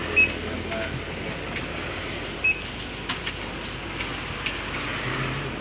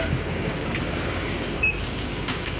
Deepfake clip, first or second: second